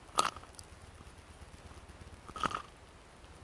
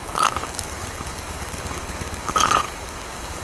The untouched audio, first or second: first